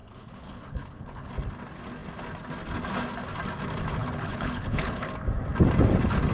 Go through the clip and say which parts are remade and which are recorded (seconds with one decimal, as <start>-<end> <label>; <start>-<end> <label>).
0.0-1.3 remade; 1.3-4.0 recorded; 4.0-5.1 remade; 5.1-6.3 recorded